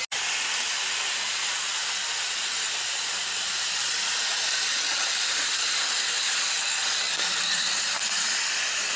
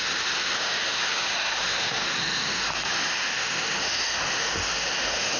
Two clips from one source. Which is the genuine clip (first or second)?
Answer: first